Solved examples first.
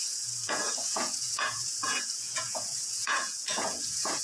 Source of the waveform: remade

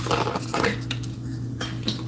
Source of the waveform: recorded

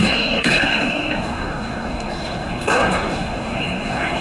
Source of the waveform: remade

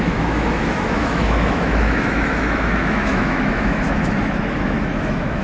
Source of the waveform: remade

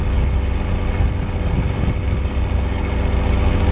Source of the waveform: recorded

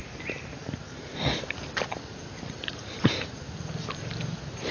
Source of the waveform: recorded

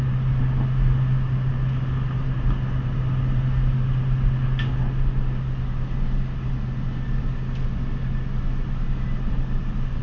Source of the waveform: recorded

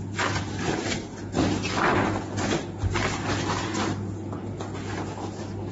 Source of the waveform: recorded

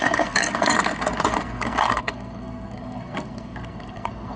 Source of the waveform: remade